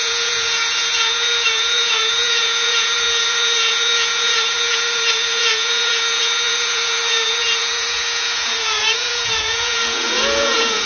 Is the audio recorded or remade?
remade